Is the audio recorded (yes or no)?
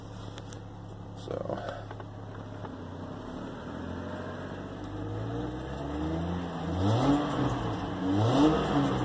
yes